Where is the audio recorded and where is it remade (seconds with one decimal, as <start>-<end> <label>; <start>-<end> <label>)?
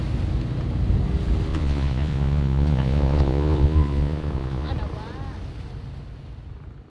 0.0-1.5 recorded; 1.5-4.7 remade; 4.7-6.9 recorded